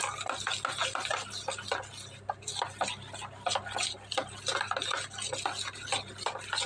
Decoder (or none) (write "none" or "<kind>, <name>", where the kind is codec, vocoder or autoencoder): none